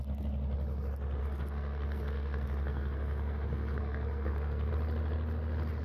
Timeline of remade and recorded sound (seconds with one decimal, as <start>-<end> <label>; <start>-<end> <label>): 0.0-1.2 recorded; 1.2-4.7 remade; 4.7-5.8 recorded